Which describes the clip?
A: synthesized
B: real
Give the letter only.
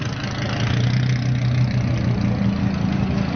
B